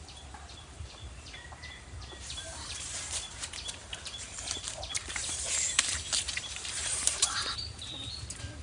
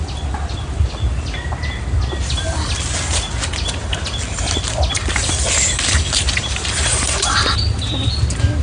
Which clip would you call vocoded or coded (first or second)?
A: first